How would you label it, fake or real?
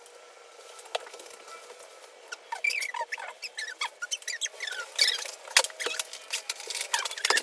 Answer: real